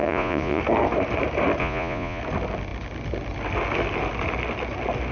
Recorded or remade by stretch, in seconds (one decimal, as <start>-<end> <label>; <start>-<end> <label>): 0.0-0.6 remade; 0.6-1.6 recorded; 1.6-2.2 remade; 2.2-5.1 recorded